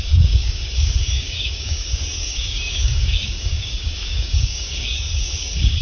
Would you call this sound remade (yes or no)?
yes